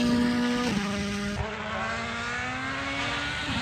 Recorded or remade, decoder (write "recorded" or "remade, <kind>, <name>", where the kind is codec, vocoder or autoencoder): recorded